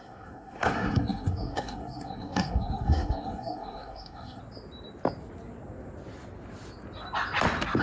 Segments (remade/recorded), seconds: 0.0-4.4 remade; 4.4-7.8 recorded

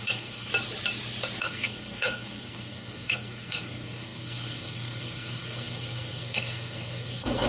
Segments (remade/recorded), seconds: 0.0-0.5 remade; 0.5-1.4 recorded; 1.4-7.5 remade

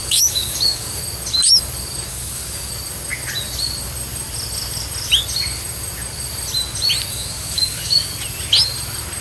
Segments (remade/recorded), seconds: 0.0-1.0 remade; 1.0-2.1 recorded; 2.1-2.7 remade; 2.7-7.1 recorded; 7.1-8.1 remade; 8.1-9.2 recorded

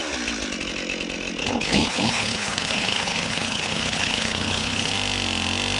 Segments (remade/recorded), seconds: 0.0-1.4 recorded; 1.4-4.9 remade; 4.9-5.8 recorded

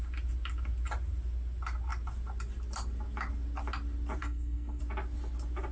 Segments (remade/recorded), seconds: 0.0-4.2 recorded; 4.2-4.8 remade; 4.8-5.7 recorded

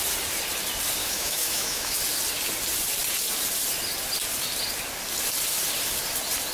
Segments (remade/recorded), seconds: 0.0-1.0 recorded; 1.0-2.0 remade; 2.0-6.5 recorded

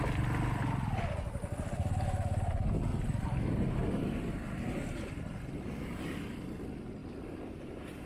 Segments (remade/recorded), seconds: 0.0-2.9 recorded; 2.9-3.7 remade; 3.7-7.0 recorded; 7.0-7.5 remade; 7.5-8.1 recorded